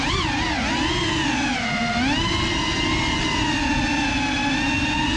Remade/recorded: recorded